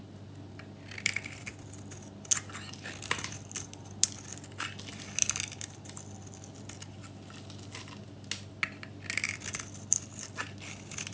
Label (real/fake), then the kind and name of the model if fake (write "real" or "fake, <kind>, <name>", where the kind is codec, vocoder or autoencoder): real